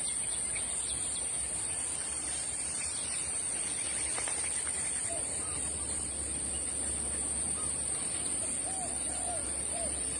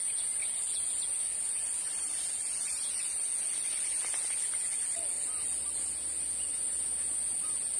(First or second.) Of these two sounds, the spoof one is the first